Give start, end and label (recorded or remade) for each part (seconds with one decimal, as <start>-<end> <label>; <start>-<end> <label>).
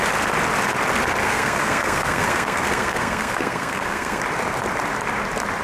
0.0-1.2 recorded; 1.2-4.2 remade; 4.2-5.6 recorded